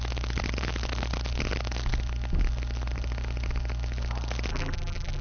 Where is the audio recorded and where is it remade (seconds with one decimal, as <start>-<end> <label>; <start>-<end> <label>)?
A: 0.0-4.5 recorded; 4.5-5.2 remade